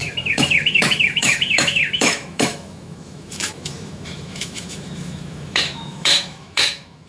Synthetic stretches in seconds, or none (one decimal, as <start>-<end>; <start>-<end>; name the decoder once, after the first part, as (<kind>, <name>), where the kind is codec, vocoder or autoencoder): 0.0-7.1 (autoencoder, DAC-VAE)